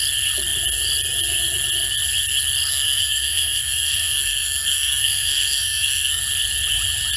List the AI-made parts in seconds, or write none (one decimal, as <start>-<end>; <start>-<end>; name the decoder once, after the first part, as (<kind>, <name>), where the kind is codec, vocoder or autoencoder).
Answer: 2.7-6.2 (codec, SNAC)